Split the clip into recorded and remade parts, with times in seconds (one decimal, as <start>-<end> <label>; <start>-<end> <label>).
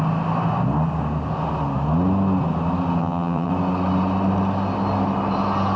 0.0-3.0 recorded; 3.0-3.5 remade; 3.5-5.8 recorded